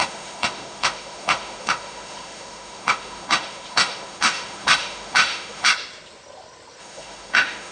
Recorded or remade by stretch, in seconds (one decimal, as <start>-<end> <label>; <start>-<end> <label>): 0.0-5.7 remade; 5.7-6.8 recorded; 6.8-7.7 remade